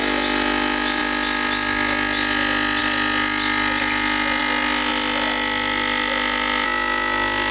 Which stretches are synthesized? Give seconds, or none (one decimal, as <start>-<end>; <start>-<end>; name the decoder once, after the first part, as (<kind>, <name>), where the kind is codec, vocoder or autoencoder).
none